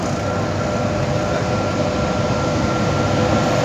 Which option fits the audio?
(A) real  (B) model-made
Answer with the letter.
A